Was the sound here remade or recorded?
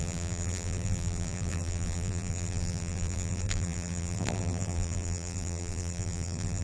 remade